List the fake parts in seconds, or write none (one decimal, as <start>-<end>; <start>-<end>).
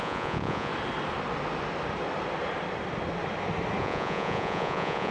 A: 0.0-0.7; 3.8-5.1